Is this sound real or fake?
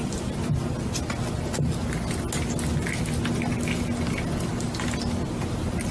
real